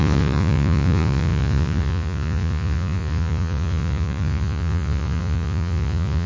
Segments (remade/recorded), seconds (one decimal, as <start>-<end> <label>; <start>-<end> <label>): 0.0-6.3 remade

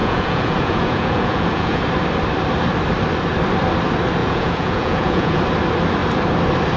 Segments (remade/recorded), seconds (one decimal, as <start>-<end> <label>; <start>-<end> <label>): 0.0-1.8 remade; 1.8-4.2 recorded; 4.2-5.4 remade; 5.4-6.8 recorded

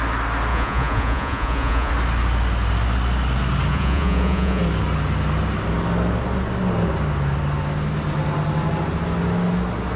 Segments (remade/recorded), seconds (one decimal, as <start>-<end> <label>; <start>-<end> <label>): 0.0-0.5 recorded; 0.5-1.9 remade; 1.9-3.7 recorded; 3.7-4.6 remade; 4.6-10.0 recorded

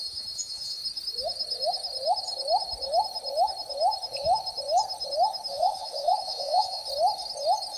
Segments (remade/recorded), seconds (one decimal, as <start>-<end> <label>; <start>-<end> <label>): 0.0-0.8 remade; 0.8-5.5 recorded; 5.5-6.8 remade; 6.8-7.8 recorded

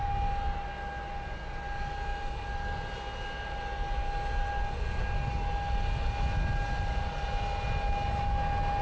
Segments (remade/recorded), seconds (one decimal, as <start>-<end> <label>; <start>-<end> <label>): 0.0-8.8 recorded